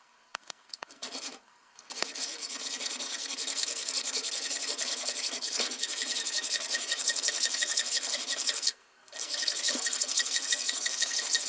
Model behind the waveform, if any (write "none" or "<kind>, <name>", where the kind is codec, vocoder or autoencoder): codec, SNAC